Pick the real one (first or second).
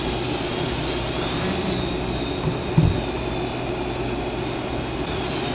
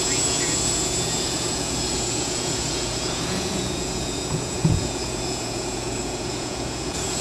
first